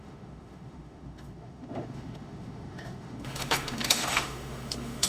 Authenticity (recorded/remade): remade